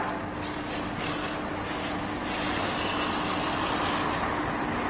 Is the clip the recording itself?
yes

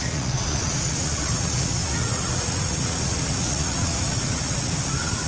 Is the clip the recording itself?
no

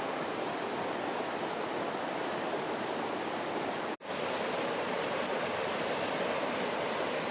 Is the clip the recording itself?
yes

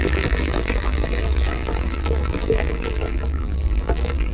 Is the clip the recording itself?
no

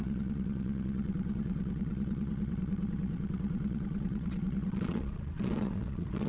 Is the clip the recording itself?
no